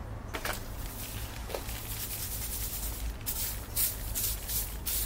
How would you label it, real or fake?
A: real